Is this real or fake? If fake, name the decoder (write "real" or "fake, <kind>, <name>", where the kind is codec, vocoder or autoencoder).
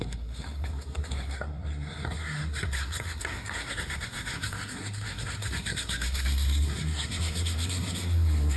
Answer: fake, codec, SNAC